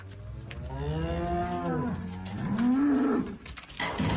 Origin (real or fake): real